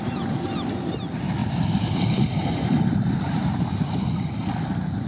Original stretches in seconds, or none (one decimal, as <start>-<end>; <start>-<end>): 0.0-1.4; 4.1-5.1